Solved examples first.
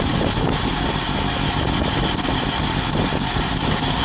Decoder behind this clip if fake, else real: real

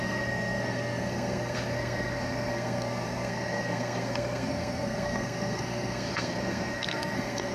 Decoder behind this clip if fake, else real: fake, codec, SNAC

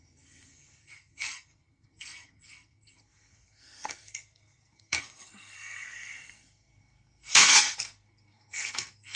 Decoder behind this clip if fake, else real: fake, codec, SNAC